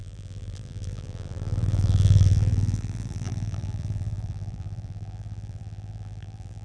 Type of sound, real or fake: fake